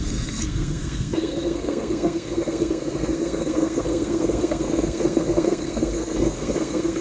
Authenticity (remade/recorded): remade